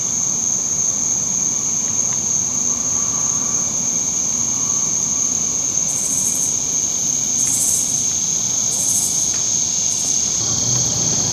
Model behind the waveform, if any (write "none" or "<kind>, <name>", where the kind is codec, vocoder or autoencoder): none